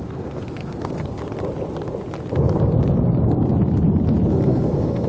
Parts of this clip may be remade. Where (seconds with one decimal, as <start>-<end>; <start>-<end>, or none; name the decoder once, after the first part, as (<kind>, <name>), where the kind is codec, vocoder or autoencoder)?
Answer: 0.0-1.2 (codec, SNAC); 4.3-5.1